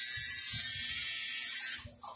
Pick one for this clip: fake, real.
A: real